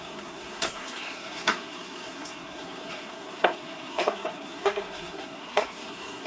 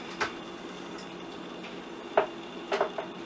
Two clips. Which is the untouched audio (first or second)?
second